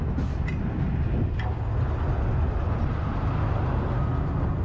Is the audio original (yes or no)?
yes